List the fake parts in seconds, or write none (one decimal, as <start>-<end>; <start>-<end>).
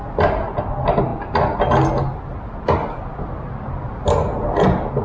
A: none